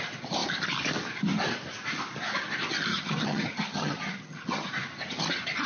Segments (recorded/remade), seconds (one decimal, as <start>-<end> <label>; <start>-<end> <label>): 0.0-2.9 recorded; 2.9-4.7 remade; 4.7-5.7 recorded